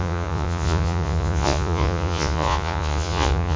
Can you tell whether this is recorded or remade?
remade